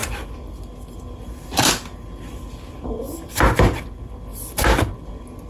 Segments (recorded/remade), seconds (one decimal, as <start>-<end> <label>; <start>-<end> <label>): 0.0-5.5 recorded